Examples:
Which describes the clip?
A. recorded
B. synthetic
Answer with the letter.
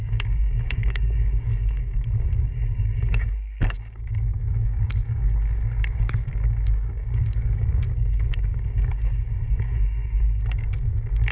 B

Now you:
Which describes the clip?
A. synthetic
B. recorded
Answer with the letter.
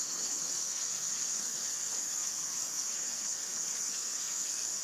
A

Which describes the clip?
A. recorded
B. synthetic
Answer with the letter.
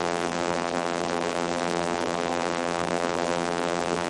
B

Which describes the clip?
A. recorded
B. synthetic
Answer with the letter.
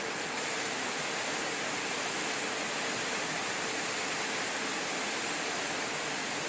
A